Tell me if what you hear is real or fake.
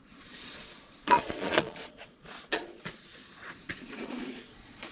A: fake